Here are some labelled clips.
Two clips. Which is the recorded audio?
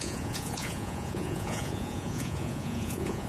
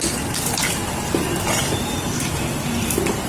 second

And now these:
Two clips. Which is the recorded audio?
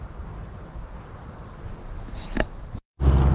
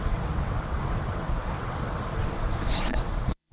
first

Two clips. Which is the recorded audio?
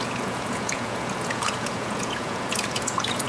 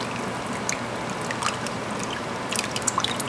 second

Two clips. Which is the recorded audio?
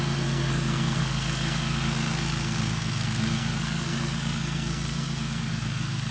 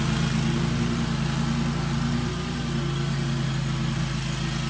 second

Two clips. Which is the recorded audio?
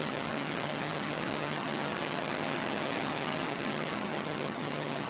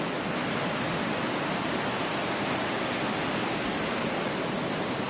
second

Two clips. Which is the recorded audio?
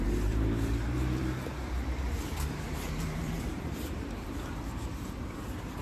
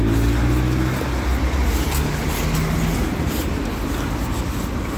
second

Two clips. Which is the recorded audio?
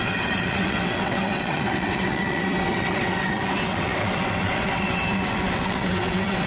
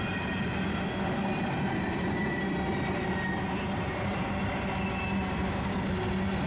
second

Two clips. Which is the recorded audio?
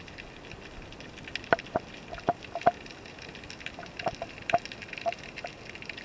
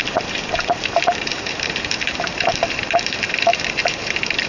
first